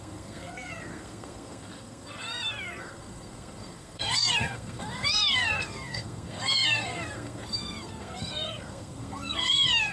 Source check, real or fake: fake